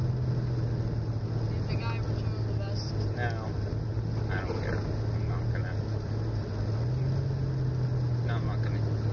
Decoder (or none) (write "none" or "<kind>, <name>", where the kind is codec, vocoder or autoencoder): none